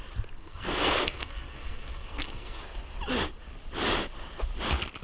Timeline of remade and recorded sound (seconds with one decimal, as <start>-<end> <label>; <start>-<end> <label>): 0.0-0.4 recorded; 0.4-2.6 remade; 2.6-5.0 recorded

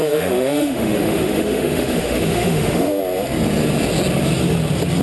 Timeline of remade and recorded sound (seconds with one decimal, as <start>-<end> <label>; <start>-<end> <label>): 0.0-3.0 remade; 3.0-5.0 recorded